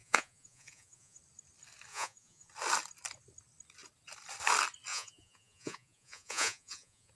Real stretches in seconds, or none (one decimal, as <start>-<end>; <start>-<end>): 1.2-1.9; 2.5-4.9